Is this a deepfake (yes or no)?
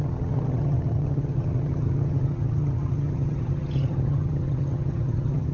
yes